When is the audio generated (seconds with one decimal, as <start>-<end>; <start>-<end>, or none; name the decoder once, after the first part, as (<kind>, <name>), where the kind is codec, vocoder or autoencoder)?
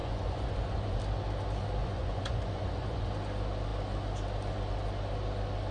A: 0.0-1.0 (vocoder, Vocos); 1.8-3.1